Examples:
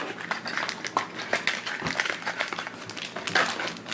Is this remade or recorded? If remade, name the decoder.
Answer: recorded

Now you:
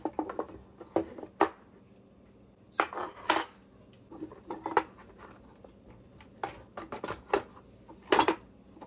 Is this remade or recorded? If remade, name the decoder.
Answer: recorded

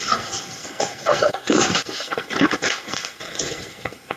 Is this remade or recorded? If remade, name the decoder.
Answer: remade, codec, SNAC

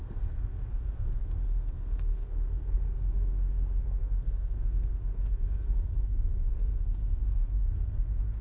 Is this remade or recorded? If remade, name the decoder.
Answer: remade, codec, SNAC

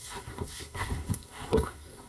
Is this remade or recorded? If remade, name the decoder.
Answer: remade, codec, SNAC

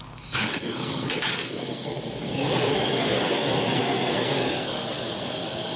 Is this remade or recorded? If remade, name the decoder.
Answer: remade, codec, SNAC